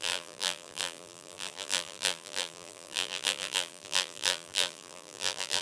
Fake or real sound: fake